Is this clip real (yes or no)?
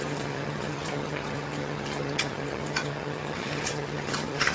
no